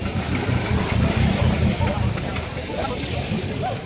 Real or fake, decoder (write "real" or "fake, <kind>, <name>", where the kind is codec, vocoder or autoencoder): real